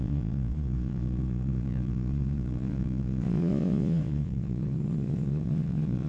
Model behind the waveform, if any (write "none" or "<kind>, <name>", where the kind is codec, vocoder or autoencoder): vocoder, Vocos